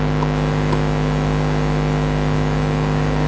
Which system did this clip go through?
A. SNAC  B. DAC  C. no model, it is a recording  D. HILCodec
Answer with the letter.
C